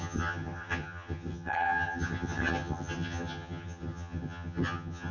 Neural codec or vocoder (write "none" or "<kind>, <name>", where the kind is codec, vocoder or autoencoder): vocoder, HiFi-GAN